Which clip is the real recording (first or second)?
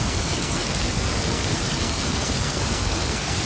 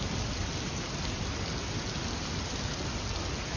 second